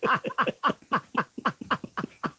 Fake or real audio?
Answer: real